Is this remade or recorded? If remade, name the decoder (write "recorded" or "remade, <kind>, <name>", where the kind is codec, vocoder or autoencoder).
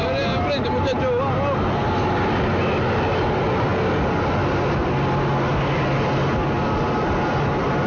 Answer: recorded